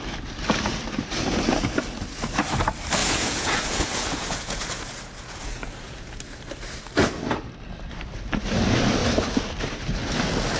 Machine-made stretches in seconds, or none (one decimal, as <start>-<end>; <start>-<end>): 3.0-6.2